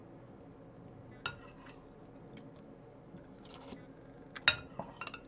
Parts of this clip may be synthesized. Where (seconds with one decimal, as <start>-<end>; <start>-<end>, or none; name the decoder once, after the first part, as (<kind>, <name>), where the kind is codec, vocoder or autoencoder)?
none